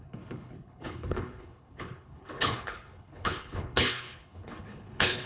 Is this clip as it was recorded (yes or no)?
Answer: no